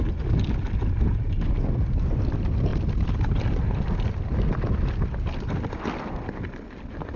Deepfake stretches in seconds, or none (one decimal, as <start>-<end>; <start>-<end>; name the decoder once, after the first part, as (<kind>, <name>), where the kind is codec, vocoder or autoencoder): 2.7-4.1 (vocoder, BigVGAN v2)